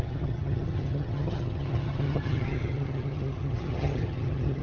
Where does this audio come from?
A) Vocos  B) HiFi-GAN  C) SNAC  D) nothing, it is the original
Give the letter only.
B